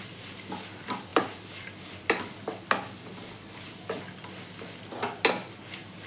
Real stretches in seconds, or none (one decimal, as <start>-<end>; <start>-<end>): 0.0-6.1